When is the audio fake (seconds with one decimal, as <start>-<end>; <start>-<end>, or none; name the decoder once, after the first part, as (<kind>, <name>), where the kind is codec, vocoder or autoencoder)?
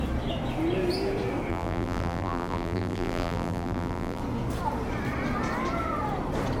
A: 1.5-4.2 (vocoder, BigVGAN v2)